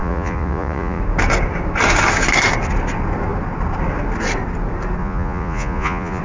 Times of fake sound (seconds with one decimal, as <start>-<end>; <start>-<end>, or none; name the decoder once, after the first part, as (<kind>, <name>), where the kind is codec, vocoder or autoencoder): 0.0-1.0 (vocoder, Vocos); 5.0-6.2